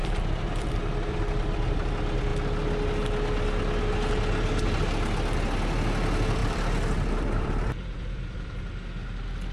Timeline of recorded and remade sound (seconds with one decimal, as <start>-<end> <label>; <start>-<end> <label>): 0.0-0.7 remade; 0.7-1.1 recorded; 1.1-1.9 remade; 1.9-6.4 recorded; 6.4-8.6 remade; 8.6-9.5 recorded